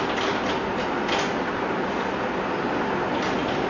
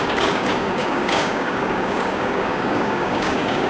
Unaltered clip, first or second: first